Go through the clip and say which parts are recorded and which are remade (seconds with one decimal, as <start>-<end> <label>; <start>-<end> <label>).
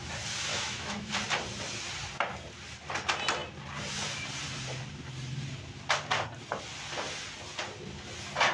0.0-0.5 recorded; 0.5-1.1 remade; 1.1-8.5 recorded